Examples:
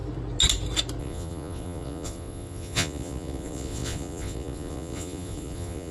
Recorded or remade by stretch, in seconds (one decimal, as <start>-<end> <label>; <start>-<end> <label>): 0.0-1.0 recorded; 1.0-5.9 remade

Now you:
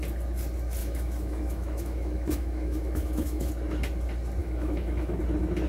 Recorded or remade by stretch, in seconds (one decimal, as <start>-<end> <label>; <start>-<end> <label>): 0.0-0.8 recorded; 0.8-3.5 remade; 3.5-4.4 recorded; 4.4-5.2 remade; 5.2-5.7 recorded

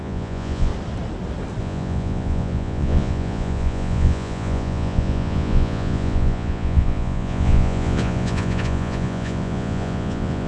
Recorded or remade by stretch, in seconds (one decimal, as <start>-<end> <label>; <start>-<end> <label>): 0.0-0.7 remade; 0.7-1.6 recorded; 1.6-10.5 remade

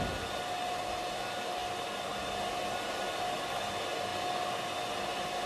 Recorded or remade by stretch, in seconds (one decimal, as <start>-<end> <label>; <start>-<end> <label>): 0.0-5.5 recorded